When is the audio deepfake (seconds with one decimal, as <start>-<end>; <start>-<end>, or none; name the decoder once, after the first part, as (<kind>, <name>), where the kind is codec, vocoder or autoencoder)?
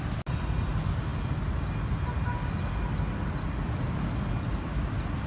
none